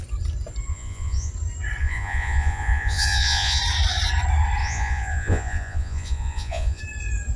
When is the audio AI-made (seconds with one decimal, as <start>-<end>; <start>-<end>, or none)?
0.7-1.3; 1.8-3.6; 4.6-6.8

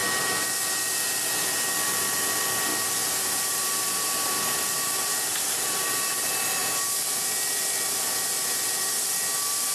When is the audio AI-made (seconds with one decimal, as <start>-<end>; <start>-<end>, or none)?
2.7-3.7; 4.7-6.1